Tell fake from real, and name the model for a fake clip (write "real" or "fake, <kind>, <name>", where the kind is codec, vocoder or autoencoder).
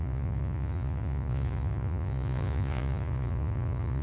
fake, vocoder, Vocos